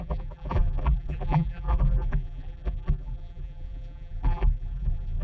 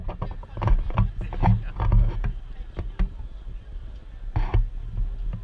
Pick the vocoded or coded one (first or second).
first